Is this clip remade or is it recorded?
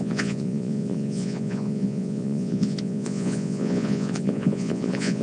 remade